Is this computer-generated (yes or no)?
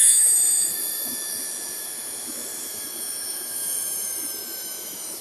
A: yes